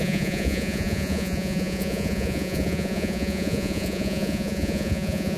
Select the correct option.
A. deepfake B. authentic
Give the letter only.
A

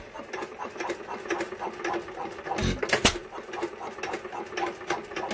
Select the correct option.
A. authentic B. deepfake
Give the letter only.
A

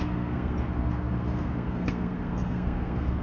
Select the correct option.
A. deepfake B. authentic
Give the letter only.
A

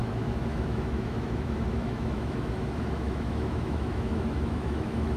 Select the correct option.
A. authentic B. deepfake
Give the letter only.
B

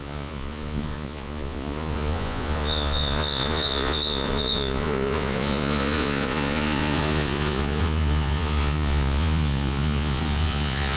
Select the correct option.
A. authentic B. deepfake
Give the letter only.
B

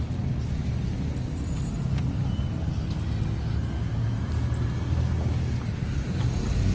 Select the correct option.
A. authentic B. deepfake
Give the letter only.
A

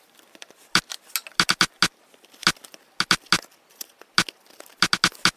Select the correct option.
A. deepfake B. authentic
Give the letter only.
B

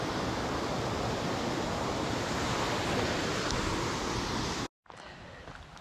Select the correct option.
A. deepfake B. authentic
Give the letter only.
B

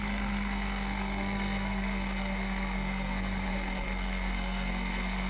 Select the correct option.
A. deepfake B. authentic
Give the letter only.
A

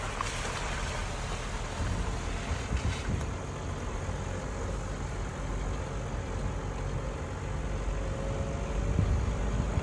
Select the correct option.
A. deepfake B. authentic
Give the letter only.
B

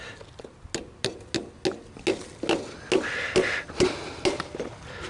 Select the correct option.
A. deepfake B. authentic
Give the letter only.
B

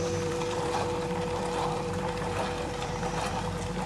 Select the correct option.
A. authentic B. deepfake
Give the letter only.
B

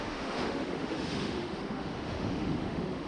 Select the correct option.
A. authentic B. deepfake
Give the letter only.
B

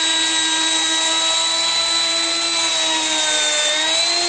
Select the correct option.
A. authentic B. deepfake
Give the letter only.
A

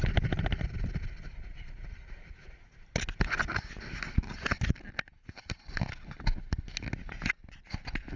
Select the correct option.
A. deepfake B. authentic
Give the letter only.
B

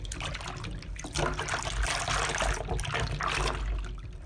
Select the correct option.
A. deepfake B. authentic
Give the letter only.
B